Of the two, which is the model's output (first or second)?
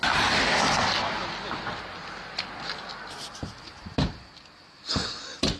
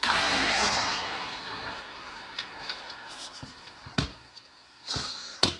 second